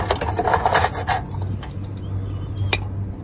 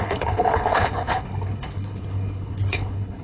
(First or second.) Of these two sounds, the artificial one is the second